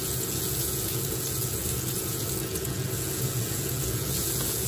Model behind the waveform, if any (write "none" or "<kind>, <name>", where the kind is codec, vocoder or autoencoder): vocoder, Vocos